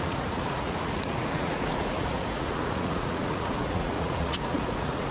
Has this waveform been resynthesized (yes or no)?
yes